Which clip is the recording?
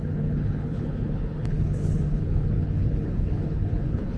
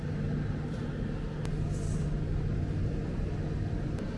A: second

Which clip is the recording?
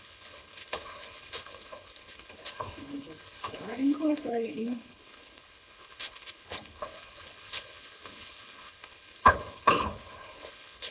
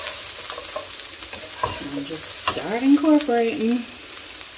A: second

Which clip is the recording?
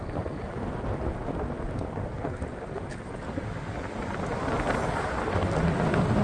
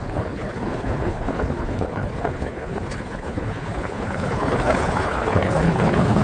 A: first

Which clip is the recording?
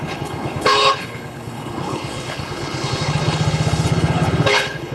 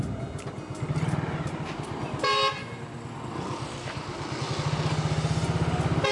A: second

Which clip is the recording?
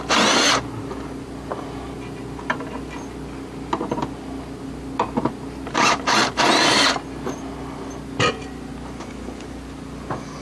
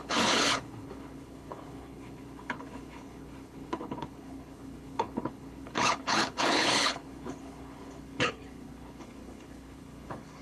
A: first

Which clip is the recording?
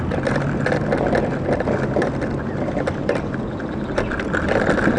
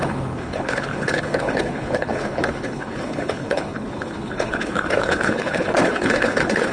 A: first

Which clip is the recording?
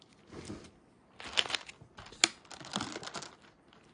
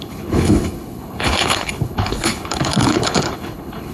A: first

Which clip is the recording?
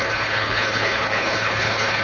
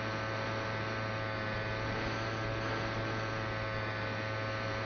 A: second